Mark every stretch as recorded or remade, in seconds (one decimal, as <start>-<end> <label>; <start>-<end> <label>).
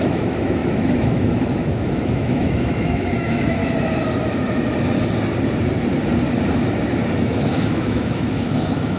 0.0-3.6 remade; 3.6-7.2 recorded; 7.2-9.0 remade